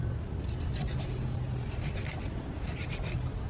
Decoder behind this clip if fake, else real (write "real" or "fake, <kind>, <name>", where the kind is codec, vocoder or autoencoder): fake, vocoder, BigVGAN v2